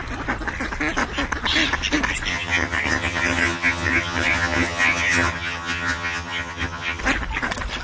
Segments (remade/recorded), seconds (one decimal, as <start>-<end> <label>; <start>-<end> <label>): 0.0-2.3 recorded; 2.3-7.0 remade; 7.0-7.8 recorded